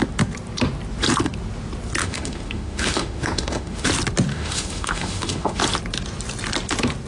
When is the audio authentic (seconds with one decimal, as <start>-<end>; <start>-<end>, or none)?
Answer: 0.0-2.0; 3.9-4.3; 5.6-7.1